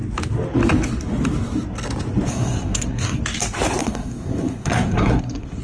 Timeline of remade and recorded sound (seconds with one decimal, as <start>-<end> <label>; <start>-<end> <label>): 0.0-2.3 recorded; 2.3-3.2 remade; 3.2-3.8 recorded; 3.8-5.6 remade